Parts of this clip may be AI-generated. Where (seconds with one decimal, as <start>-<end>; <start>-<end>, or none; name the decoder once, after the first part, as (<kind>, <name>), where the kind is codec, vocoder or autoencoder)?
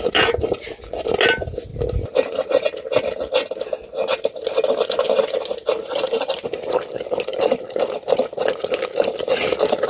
none